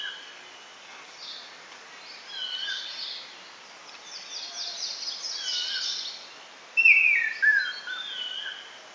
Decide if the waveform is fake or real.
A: real